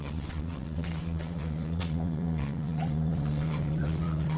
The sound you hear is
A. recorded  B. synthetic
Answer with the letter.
B